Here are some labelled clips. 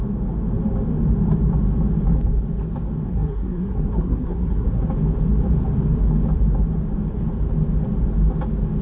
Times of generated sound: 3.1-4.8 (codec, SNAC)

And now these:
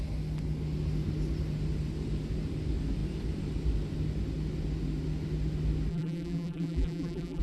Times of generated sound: 5.9-7.4 (vocoder, BigVGAN v2)

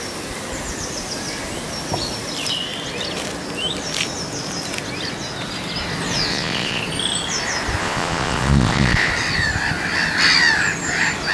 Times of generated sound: 6.3-6.8 (vocoder, Vocos); 7.8-9.1